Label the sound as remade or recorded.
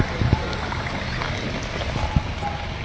recorded